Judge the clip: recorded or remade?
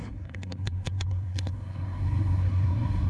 remade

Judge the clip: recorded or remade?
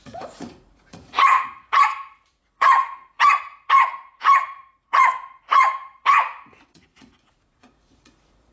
remade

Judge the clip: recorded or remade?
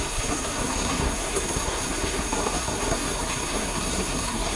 remade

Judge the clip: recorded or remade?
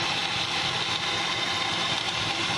remade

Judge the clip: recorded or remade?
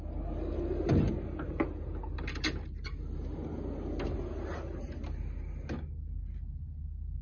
recorded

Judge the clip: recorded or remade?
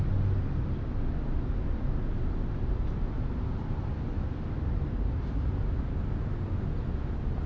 recorded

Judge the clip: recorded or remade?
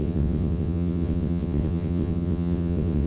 remade